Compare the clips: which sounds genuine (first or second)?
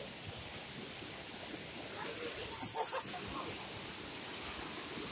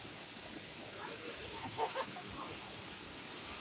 first